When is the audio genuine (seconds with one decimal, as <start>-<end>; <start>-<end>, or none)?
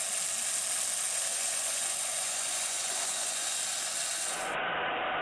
0.0-1.3; 3.6-4.1; 4.7-5.2